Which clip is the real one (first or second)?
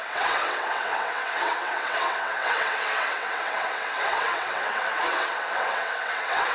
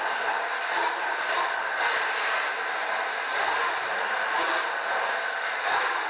second